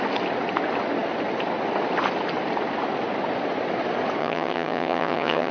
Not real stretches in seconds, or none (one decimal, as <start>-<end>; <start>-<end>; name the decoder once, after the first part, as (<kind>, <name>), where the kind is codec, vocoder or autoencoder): 4.2-5.5 (vocoder, HiFi-GAN)